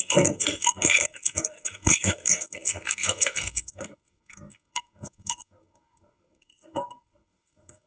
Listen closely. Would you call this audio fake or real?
fake